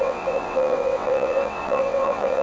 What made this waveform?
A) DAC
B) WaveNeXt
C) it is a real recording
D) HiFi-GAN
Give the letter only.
B